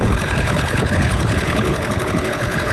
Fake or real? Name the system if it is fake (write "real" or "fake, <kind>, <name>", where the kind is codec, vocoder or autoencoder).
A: fake, codec, HILCodec